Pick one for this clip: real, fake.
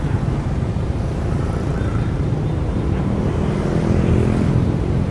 fake